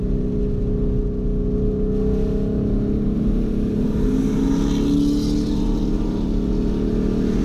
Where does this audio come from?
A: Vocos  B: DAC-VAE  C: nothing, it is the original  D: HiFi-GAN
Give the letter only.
C